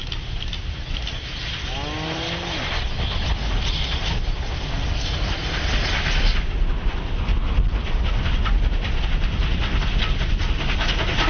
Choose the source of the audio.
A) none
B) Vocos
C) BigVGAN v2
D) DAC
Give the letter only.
A